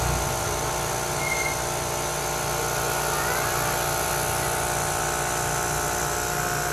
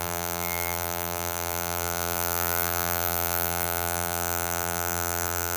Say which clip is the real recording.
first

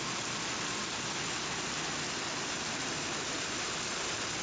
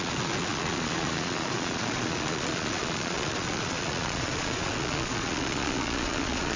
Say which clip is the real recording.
first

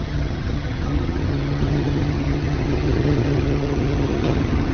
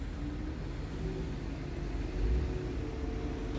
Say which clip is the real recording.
second